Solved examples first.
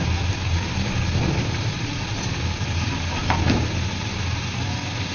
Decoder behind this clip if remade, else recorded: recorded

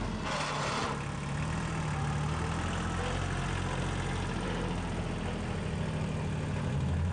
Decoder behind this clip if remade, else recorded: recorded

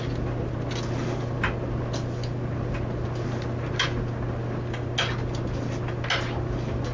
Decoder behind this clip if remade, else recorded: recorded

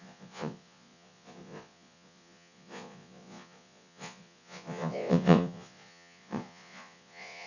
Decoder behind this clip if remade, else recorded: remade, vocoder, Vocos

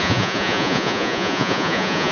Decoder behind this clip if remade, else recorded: remade, vocoder, Vocos